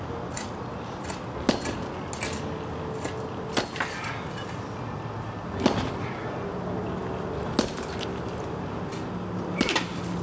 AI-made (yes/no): no